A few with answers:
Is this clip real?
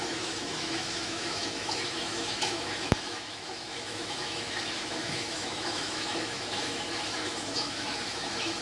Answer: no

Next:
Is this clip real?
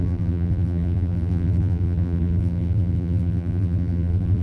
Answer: no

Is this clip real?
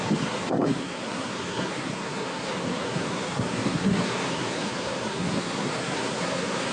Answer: no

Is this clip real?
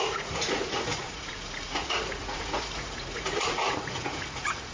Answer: no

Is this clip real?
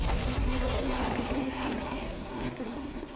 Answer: no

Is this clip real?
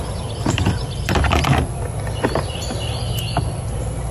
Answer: no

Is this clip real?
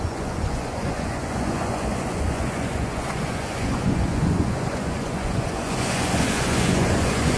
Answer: no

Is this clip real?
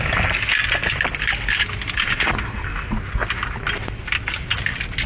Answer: yes